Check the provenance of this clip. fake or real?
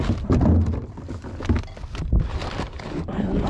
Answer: real